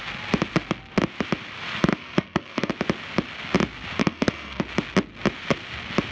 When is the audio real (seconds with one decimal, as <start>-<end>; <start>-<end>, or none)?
0.0-1.8; 2.7-4.0; 4.6-6.1